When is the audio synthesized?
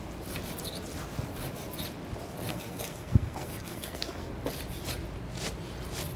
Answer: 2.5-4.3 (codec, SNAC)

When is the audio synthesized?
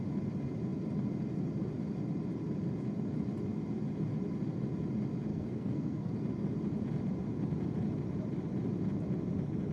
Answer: 5.3-6.1 (codec, SNAC)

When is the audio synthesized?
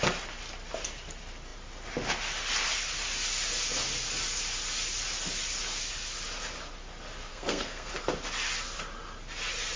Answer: 7.3-7.9 (codec, SNAC)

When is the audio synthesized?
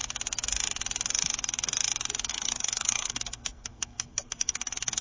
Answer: 2.3-5.0 (codec, SNAC)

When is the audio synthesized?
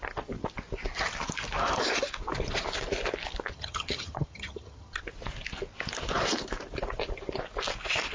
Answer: 3.5-5.0 (vocoder, HiFi-GAN)